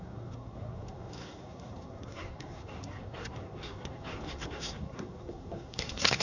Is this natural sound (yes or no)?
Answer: no